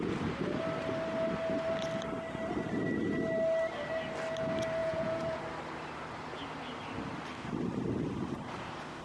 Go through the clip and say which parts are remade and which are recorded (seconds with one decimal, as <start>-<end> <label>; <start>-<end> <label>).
0.0-4.8 recorded; 4.8-5.4 remade; 5.4-9.0 recorded